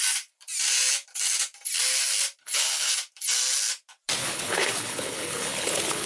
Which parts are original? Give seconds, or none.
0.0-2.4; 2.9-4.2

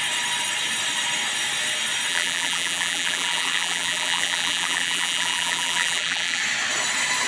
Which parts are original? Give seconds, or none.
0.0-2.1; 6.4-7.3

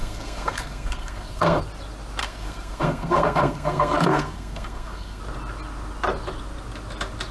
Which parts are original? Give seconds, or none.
1.6-2.2; 5.2-7.3

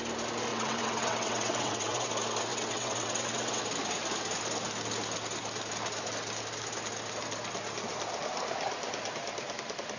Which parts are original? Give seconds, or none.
0.0-0.5; 2.1-2.5; 3.6-10.0

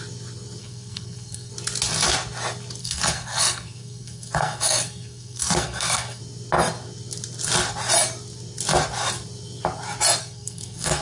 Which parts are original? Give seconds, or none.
0.0-0.6; 1.5-2.8; 6.2-10.2

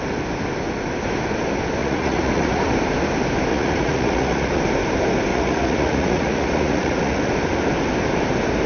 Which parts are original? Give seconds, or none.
0.0-1.8; 2.6-3.5; 4.6-5.3; 7.3-8.7

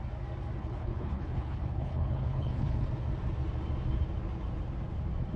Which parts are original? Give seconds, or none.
0.0-0.6; 2.9-5.4